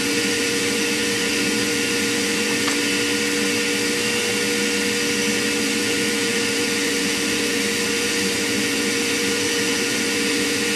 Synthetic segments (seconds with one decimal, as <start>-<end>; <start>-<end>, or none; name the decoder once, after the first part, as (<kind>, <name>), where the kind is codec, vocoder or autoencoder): 0.0-2.7 (vocoder, Vocos); 5.6-10.8